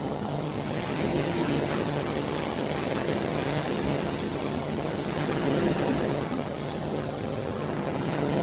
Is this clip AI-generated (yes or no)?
yes